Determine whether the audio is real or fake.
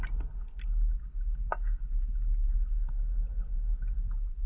real